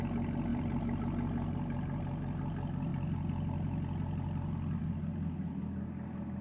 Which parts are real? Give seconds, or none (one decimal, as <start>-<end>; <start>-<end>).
0.0-0.5; 1.0-6.4